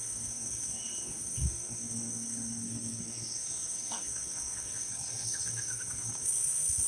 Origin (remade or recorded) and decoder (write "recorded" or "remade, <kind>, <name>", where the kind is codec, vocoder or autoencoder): remade, codec, SNAC